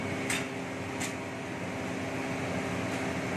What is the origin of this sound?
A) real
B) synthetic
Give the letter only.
A